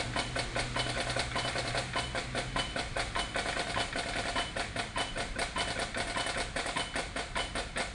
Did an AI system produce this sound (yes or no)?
no